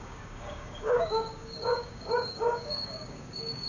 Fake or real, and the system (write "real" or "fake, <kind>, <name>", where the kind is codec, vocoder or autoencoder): fake, codec, DAC